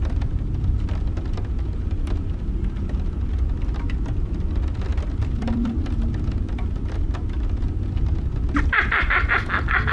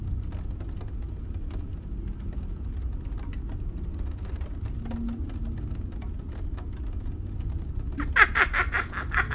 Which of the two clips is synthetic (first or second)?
first